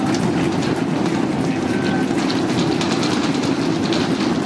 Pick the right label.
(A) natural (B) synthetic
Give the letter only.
A